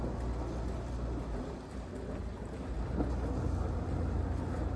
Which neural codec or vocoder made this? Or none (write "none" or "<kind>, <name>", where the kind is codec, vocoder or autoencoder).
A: none